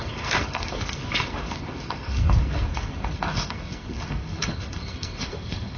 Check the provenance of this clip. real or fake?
fake